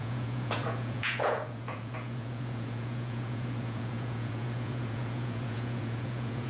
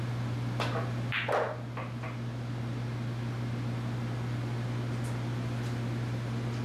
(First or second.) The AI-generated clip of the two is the first